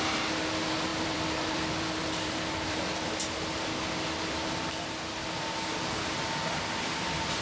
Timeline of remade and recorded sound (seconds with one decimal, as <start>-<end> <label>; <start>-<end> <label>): 0.0-0.9 recorded; 0.9-3.0 remade; 3.0-7.4 recorded